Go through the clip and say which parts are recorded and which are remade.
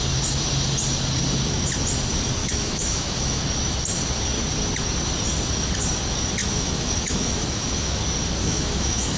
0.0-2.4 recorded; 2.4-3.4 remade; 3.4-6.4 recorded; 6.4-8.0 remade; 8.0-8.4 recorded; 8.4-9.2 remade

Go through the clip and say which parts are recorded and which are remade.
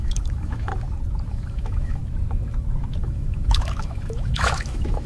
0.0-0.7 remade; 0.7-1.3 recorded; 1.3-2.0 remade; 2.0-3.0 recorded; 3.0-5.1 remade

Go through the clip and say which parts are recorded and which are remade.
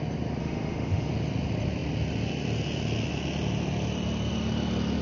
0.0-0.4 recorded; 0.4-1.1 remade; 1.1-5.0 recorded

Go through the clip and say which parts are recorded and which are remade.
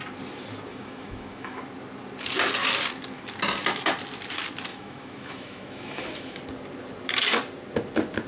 0.0-0.7 recorded; 0.7-1.6 remade; 1.6-4.7 recorded; 4.7-6.4 remade; 6.4-8.3 recorded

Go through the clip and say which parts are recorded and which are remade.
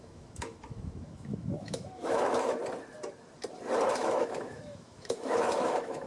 0.0-2.6 remade; 2.6-3.9 recorded; 3.9-6.1 remade